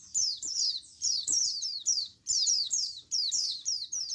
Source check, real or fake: fake